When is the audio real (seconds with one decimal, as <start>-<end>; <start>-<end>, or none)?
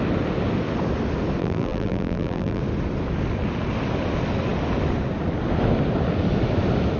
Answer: 0.0-1.4; 2.6-7.0